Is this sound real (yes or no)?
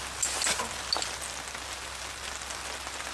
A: yes